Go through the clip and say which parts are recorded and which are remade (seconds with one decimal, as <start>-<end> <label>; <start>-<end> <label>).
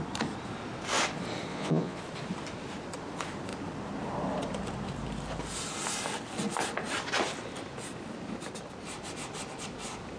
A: 0.0-1.5 recorded; 1.5-2.0 remade; 2.0-10.2 recorded